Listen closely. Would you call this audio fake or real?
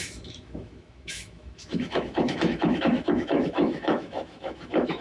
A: fake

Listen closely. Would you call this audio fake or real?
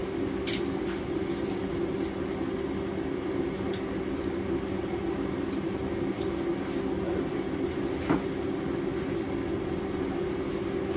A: real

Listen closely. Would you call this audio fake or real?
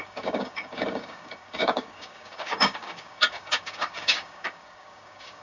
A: fake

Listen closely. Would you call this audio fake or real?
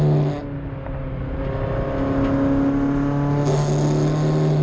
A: real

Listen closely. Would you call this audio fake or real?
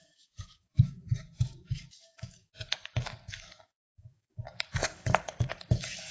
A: fake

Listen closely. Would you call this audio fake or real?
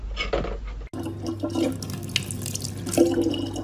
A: real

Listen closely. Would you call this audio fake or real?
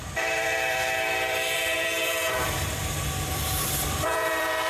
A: fake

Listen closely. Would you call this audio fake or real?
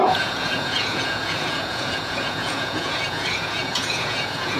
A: fake